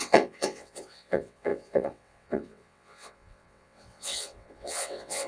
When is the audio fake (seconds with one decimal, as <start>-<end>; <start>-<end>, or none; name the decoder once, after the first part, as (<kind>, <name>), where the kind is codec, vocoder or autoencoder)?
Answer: 0.0-5.3 (vocoder, WaveNeXt)